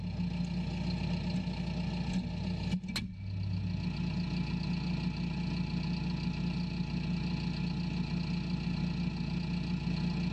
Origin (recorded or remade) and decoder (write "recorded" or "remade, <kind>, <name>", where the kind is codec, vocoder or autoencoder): recorded